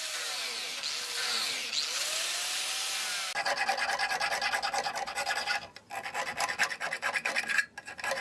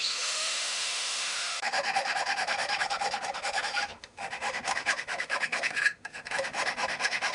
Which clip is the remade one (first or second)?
second